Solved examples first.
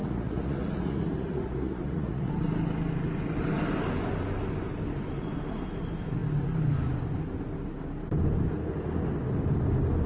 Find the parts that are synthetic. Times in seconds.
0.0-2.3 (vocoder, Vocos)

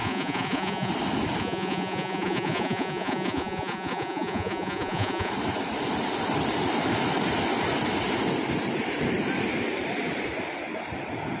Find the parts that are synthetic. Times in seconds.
0.0-0.9 (vocoder, Vocos); 1.4-5.3